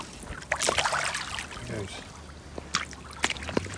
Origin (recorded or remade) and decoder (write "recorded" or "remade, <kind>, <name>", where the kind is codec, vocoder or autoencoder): recorded